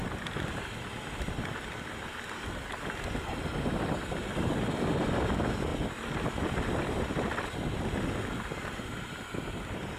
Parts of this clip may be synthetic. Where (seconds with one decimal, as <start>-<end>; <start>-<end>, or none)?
none